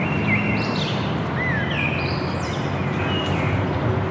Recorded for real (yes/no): yes